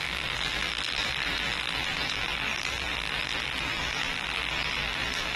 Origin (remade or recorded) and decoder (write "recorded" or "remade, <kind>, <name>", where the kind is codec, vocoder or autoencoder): remade, vocoder, BigVGAN v2